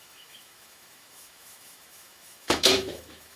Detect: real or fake fake